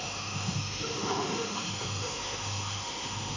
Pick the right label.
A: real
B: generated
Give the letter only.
B